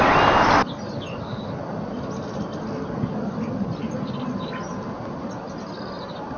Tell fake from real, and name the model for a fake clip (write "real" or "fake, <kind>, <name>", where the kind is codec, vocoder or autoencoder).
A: real